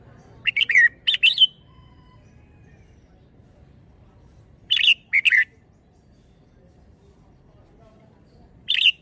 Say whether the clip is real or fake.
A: real